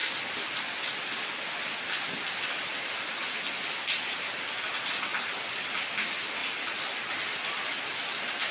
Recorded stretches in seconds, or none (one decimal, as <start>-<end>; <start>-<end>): 2.4-5.1; 5.9-8.5